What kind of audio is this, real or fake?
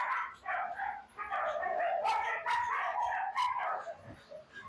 fake